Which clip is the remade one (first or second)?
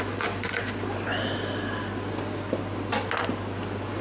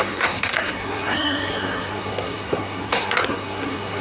second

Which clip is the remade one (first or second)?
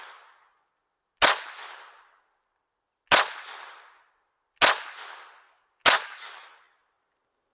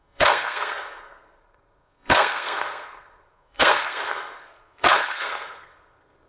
second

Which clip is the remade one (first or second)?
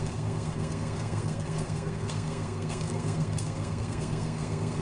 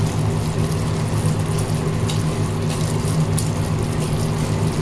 first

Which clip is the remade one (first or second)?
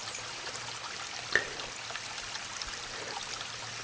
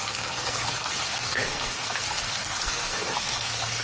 second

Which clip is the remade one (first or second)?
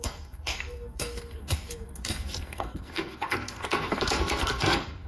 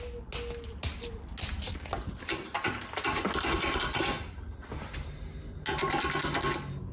first